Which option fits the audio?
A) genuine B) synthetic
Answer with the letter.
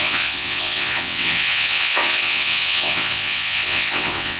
B